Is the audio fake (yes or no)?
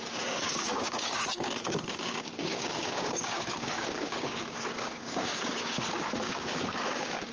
yes